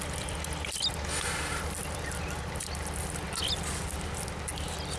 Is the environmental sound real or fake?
real